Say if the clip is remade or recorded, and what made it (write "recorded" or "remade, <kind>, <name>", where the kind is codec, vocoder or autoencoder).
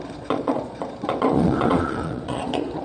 remade, vocoder, Vocos